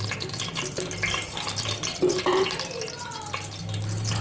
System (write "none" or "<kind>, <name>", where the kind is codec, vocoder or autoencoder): none